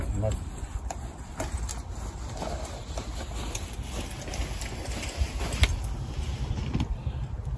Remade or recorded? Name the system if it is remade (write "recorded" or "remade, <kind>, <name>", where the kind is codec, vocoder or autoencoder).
recorded